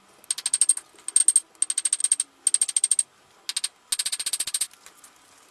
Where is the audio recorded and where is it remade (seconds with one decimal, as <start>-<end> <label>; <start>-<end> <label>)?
0.0-5.5 recorded